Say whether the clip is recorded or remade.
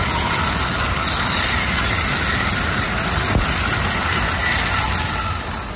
recorded